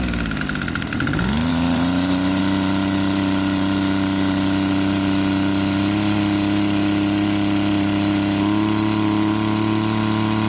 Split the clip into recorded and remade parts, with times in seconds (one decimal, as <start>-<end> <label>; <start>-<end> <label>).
0.0-1.5 recorded; 1.5-2.4 remade; 2.4-10.5 recorded